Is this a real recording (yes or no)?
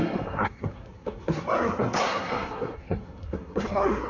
no